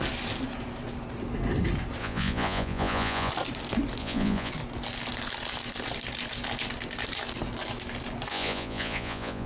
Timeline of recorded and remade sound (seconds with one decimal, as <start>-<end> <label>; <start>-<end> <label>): 0.0-2.0 recorded; 2.0-3.3 remade; 3.3-4.0 recorded; 4.0-4.5 remade; 4.5-8.3 recorded; 8.3-9.5 remade